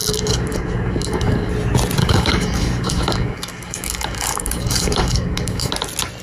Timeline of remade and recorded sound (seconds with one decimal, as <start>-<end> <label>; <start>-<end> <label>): 0.0-1.5 remade; 1.5-2.0 recorded; 2.0-5.7 remade; 5.7-6.2 recorded